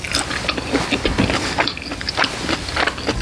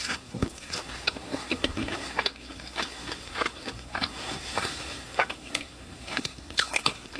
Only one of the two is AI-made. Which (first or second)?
second